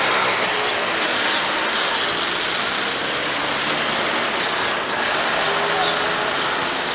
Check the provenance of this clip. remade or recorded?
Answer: recorded